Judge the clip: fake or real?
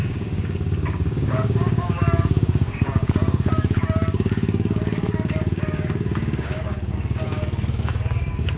fake